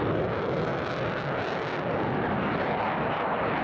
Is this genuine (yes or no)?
yes